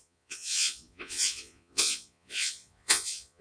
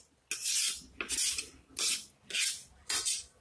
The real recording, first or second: second